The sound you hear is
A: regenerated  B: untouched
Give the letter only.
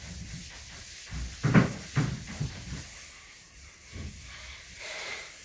B